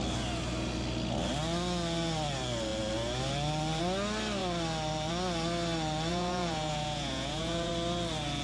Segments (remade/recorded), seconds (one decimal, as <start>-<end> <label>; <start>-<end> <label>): 0.0-6.1 recorded; 6.1-7.7 remade; 7.7-8.4 recorded